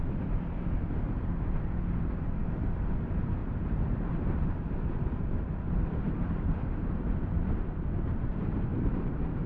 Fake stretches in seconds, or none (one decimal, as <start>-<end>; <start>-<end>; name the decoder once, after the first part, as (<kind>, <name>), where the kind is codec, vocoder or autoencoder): 0.0-9.5 (vocoder, BigVGAN v2)